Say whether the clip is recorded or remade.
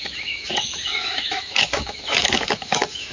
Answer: remade